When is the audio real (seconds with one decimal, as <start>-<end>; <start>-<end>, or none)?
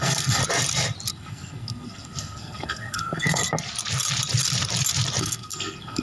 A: 0.4-1.1; 3.4-5.2